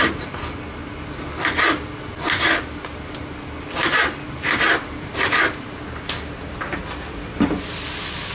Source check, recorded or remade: recorded